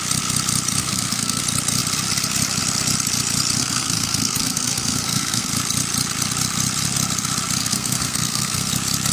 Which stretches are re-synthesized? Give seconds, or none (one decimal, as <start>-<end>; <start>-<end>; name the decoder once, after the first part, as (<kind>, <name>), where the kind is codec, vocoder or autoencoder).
0.8-1.4 (codec, SNAC); 3.6-5.5; 7.6-8.7